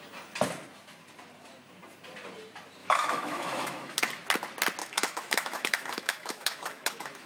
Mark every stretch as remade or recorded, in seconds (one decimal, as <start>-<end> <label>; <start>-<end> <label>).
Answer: 0.0-2.8 recorded; 2.8-4.1 remade; 4.1-4.8 recorded; 4.8-7.3 remade